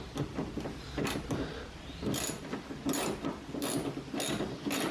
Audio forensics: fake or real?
real